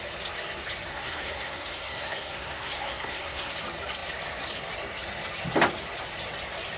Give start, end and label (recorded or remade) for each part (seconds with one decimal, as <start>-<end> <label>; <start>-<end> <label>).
0.0-0.9 recorded; 0.9-3.5 remade; 3.5-6.8 recorded